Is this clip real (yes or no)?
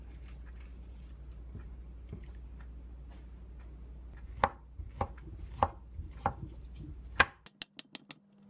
yes